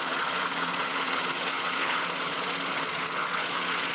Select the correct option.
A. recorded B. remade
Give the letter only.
B